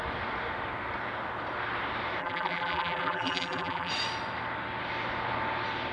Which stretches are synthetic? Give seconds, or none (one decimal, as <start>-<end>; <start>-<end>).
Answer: 2.2-3.9